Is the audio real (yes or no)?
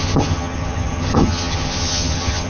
no